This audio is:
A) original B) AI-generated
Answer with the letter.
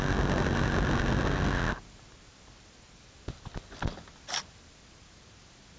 A